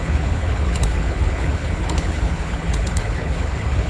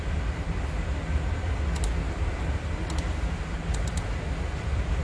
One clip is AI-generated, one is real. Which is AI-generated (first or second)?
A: first